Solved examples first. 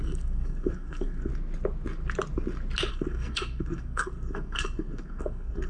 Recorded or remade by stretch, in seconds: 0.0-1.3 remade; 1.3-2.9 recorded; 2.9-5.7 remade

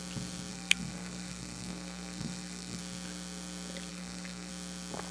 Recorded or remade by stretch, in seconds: 0.0-0.5 recorded; 0.5-2.8 remade; 2.8-3.9 recorded; 3.9-4.5 remade; 4.5-5.1 recorded

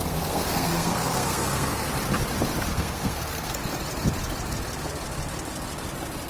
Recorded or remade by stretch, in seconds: 0.0-1.9 remade; 1.9-2.7 recorded; 2.7-3.6 remade; 3.6-6.3 recorded

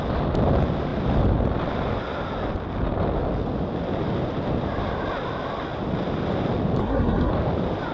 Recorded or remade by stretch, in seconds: 0.0-6.8 recorded; 6.8-7.3 remade; 7.3-7.9 recorded

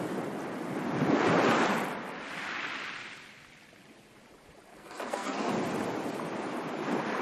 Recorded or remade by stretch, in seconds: 0.0-4.7 recorded; 4.7-5.5 remade; 5.5-7.2 recorded